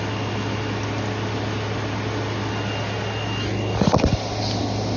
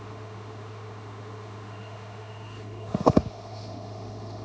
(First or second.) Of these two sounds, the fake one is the second